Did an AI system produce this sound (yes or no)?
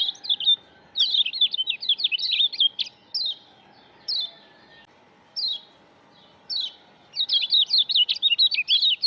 no